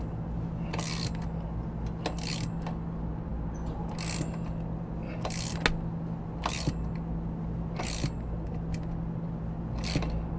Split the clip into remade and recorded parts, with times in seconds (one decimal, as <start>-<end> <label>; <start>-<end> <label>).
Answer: 0.0-10.4 recorded